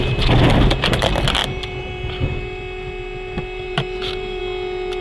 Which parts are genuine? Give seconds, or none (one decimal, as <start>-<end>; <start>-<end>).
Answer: 0.0-1.4; 4.4-5.0